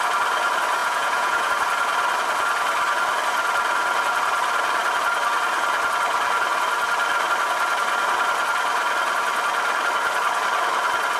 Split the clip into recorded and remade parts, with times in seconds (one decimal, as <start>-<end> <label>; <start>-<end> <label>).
0.0-0.8 recorded; 0.8-1.5 remade; 1.5-11.2 recorded